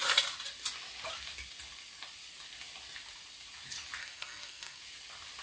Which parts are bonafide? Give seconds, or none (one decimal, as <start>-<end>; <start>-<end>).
0.0-4.0; 4.8-5.4